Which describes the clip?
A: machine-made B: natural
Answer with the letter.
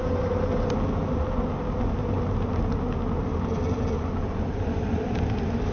B